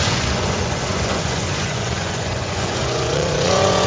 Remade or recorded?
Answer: remade